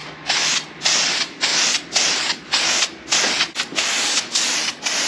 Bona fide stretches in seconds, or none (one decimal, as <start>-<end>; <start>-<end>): 0.5-5.1